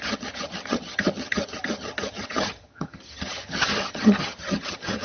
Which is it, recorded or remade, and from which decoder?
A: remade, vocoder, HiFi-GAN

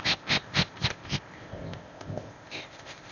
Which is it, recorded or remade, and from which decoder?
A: remade, codec, ZipCodec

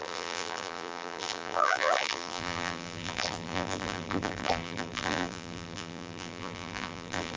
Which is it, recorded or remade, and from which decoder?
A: remade, vocoder, BigVGAN v2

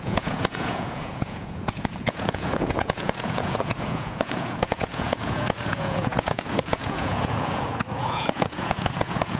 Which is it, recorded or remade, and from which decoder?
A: remade, vocoder, Vocos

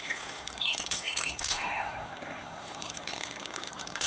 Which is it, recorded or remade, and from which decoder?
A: remade, codec, SNAC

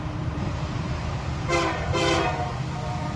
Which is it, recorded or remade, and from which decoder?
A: remade, vocoder, BigVGAN v2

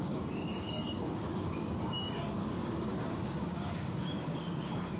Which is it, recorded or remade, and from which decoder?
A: remade, codec, DAC